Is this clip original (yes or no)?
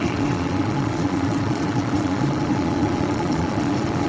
no